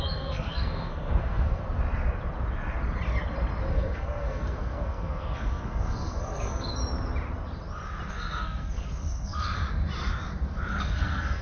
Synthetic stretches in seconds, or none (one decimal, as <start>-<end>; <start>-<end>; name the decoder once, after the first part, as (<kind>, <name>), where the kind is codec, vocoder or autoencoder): 0.0-1.6 (codec, SNAC); 3.7-6.8; 8.1-9.6; 10.7-11.4